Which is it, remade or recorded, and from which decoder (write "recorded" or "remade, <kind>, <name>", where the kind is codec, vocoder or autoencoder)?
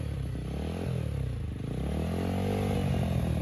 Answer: recorded